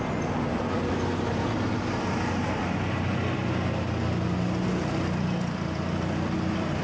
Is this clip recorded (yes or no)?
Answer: yes